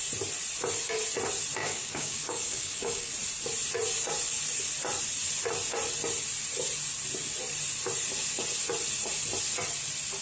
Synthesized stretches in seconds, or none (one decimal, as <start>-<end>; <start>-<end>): 1.6-3.1